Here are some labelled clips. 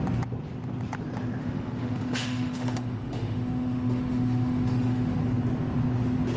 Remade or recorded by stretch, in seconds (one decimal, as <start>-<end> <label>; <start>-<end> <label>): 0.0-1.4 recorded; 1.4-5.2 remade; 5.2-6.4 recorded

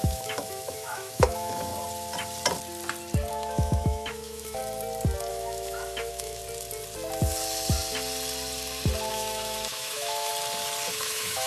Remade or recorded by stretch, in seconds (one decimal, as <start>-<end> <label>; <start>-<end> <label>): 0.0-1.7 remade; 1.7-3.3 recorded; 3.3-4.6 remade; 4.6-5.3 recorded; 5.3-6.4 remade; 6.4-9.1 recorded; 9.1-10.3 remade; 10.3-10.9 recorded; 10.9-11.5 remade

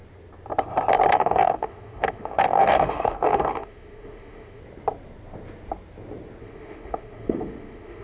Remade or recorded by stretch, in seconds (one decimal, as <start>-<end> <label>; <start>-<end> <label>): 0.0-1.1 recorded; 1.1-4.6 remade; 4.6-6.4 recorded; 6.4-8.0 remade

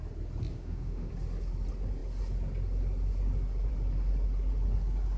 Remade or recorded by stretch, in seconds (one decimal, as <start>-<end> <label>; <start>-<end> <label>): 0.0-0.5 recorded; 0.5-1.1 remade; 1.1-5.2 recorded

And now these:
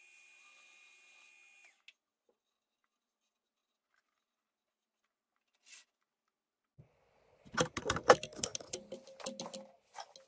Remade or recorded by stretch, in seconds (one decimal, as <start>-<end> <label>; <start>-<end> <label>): 0.0-10.3 recorded